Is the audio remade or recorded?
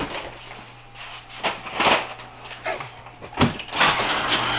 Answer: recorded